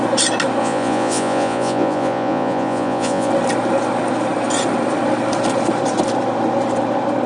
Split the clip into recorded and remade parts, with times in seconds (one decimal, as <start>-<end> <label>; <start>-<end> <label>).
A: 0.0-0.6 recorded; 0.6-3.3 remade; 3.3-7.3 recorded

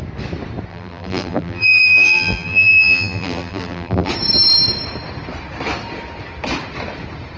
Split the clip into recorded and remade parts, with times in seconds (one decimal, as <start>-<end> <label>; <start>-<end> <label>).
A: 0.0-0.7 recorded; 0.7-4.1 remade; 4.1-7.4 recorded

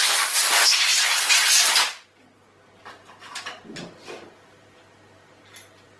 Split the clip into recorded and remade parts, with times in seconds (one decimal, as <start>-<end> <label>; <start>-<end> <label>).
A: 0.0-0.9 remade; 0.9-3.4 recorded; 3.4-6.0 remade

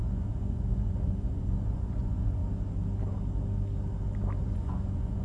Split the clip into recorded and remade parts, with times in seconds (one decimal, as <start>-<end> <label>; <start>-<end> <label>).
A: 0.0-2.4 remade; 2.4-4.4 recorded; 4.4-5.2 remade

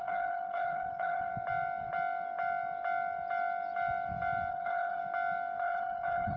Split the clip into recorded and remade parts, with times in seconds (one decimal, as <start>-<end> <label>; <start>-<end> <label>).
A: 0.0-1.3 remade; 1.3-4.5 recorded; 4.5-5.0 remade; 5.0-5.6 recorded; 5.6-6.4 remade

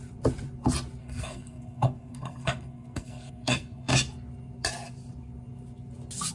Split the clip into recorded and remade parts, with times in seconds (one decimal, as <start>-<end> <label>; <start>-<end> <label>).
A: 0.0-1.0 recorded; 1.0-3.9 remade; 3.9-6.3 recorded

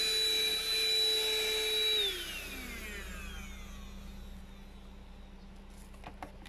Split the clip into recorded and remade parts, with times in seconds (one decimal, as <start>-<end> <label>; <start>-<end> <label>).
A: 0.0-6.5 recorded

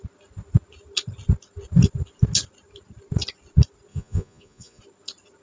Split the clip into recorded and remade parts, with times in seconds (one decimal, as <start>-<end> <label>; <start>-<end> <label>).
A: 0.0-3.9 recorded; 3.9-4.8 remade; 4.8-5.4 recorded